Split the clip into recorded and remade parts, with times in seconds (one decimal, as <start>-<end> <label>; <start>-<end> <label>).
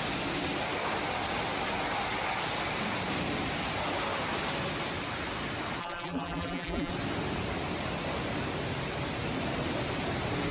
0.0-5.8 recorded; 5.8-6.9 remade; 6.9-10.5 recorded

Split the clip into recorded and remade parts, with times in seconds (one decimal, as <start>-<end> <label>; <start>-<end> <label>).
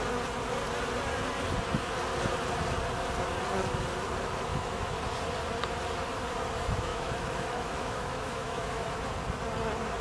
0.0-4.5 recorded; 4.5-5.0 remade; 5.0-6.9 recorded; 6.9-8.9 remade; 8.9-10.0 recorded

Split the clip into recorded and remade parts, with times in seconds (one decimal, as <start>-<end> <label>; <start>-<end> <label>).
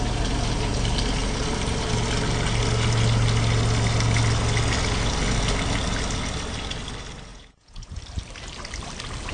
0.0-7.3 recorded; 7.3-8.0 remade; 8.0-9.3 recorded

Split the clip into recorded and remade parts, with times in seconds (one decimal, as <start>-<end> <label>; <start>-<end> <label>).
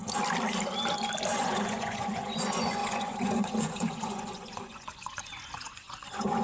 0.0-1.3 recorded; 1.3-6.4 remade